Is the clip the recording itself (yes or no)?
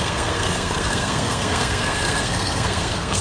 no